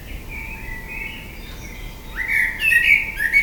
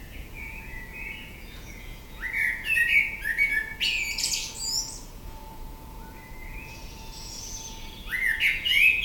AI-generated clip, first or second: second